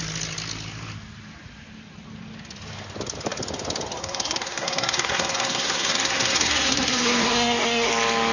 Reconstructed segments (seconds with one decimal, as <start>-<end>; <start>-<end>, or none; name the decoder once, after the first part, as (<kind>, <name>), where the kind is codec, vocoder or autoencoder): 4.0-7.9 (codec, SNAC)